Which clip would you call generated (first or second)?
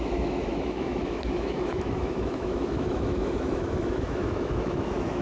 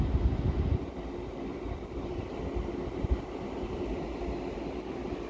first